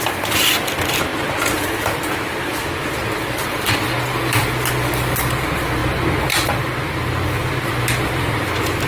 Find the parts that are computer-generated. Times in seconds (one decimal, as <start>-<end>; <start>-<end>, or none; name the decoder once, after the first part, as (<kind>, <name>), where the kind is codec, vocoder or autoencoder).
none